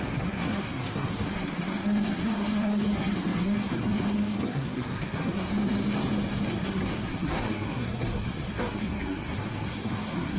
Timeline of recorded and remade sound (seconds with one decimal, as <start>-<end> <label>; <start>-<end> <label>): 0.0-5.5 remade; 5.5-6.5 recorded; 6.5-10.4 remade